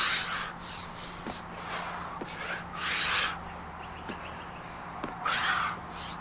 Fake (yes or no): no